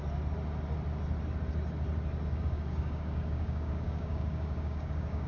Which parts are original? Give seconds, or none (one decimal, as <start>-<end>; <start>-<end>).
0.0-2.3